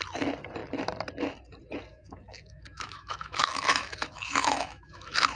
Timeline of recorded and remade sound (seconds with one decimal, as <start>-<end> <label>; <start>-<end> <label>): 0.0-1.9 recorded; 1.9-5.4 remade